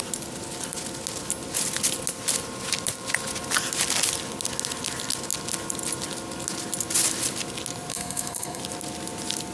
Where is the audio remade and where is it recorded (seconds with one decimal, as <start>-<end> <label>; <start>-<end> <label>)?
0.0-7.9 recorded; 7.9-8.6 remade; 8.6-9.5 recorded